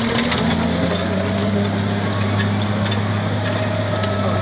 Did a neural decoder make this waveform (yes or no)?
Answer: no